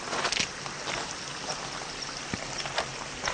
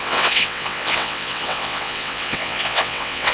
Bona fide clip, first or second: first